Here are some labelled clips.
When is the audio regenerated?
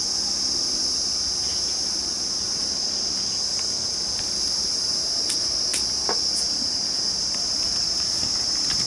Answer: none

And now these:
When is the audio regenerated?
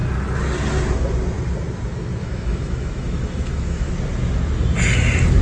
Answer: 2.2-3.9 (autoencoder, DAC-VAE)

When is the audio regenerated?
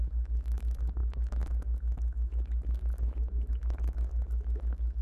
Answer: 0.0-5.0 (autoencoder, DAC-VAE)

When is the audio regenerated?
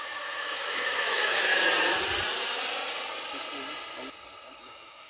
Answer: 0.0-1.5 (autoencoder, DAC-VAE); 4.6-5.1